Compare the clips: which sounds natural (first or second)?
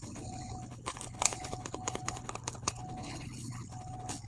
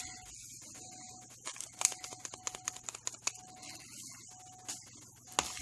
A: second